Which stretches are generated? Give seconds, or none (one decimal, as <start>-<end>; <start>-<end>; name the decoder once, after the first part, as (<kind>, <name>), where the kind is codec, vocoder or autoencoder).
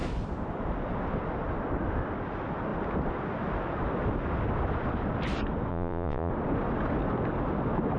5.7-6.3 (vocoder, Vocos)